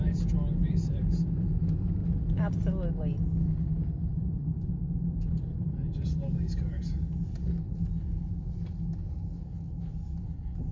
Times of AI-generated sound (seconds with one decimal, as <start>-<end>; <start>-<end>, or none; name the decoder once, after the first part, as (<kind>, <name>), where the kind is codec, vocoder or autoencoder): 0.6-1.6 (vocoder, BigVGAN v2); 4.1-5.8